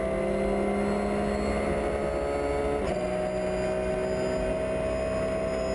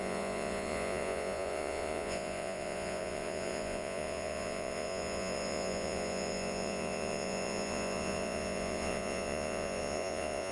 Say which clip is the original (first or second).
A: first